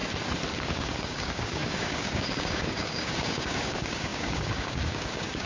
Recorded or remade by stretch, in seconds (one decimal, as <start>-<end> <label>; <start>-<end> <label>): 0.0-0.5 recorded; 0.5-5.5 remade